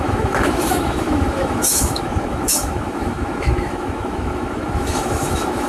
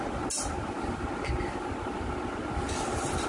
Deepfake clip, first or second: first